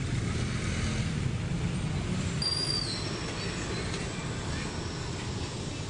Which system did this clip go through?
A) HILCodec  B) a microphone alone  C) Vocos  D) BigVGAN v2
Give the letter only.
B